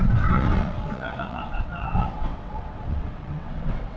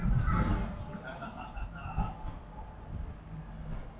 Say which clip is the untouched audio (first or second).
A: second